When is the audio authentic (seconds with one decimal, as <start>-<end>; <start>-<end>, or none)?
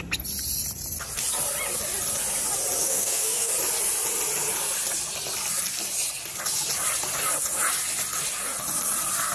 0.0-2.8; 3.5-9.3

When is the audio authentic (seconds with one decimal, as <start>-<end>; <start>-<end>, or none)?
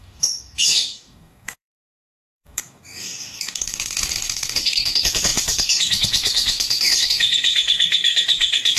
none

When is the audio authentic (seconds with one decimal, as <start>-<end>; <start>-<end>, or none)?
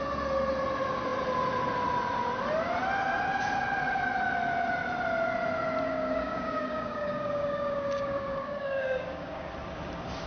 0.0-5.9; 9.5-10.3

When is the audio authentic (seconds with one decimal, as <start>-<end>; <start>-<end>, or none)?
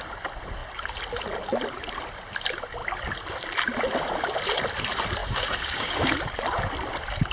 0.0-5.2; 6.1-7.3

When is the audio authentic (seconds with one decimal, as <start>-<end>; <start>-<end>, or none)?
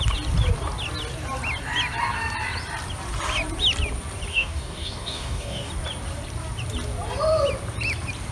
0.0-4.3; 5.7-8.3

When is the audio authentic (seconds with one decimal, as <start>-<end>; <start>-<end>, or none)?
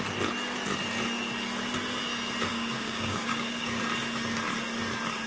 0.0-2.5; 3.8-5.3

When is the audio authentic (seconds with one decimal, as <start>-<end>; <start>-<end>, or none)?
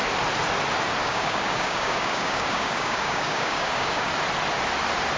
0.0-1.0; 4.1-5.2